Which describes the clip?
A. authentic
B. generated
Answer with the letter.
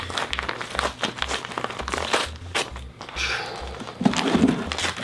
A